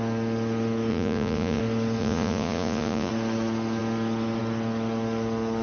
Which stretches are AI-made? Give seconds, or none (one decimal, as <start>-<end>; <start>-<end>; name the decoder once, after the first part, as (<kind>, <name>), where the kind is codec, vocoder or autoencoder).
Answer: 0.9-1.6 (vocoder, Vocos); 2.0-3.1